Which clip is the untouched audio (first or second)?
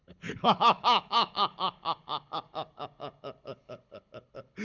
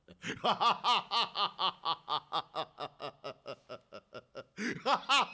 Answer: second